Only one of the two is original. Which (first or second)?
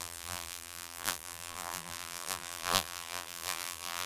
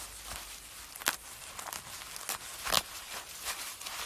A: second